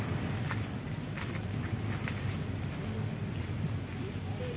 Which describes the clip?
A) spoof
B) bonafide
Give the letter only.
B